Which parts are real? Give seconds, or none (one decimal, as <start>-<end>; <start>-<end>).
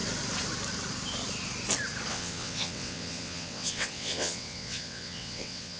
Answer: 0.0-2.1